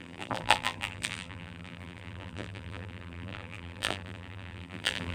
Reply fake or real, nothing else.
fake